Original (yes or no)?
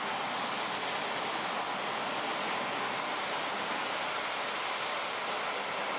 yes